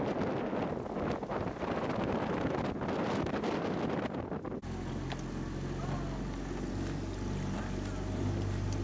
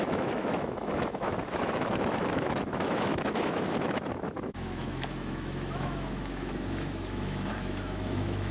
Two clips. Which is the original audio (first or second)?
first